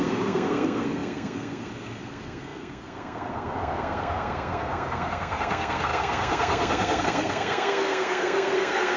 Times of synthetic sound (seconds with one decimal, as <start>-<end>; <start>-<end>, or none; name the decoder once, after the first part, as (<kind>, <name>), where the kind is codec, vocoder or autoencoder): 0.0-9.0 (codec, SNAC)